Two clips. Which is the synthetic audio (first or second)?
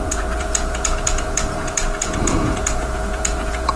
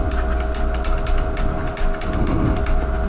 first